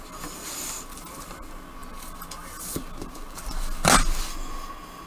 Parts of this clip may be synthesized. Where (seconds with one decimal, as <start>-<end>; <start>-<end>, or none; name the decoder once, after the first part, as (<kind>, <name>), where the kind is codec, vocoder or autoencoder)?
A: 4.3-5.1 (codec, DAC)